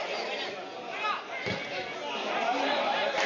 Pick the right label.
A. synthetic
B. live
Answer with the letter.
B